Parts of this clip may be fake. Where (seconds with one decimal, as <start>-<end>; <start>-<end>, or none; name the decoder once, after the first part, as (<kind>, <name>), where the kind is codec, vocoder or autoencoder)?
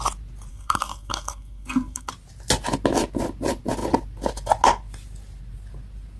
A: 0.5-2.1 (codec, SNAC)